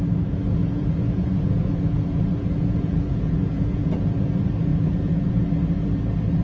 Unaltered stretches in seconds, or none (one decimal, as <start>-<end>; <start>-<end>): 0.0-0.6; 4.3-4.7; 5.5-6.4